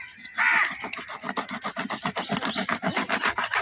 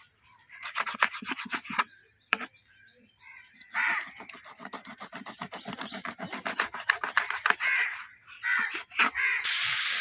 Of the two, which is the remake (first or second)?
second